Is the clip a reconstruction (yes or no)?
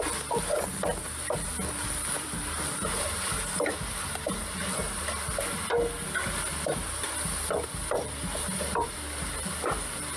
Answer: no